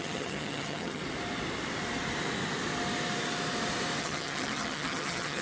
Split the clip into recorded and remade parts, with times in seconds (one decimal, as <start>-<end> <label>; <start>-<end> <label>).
0.0-1.0 remade; 1.0-4.0 recorded; 4.0-5.4 remade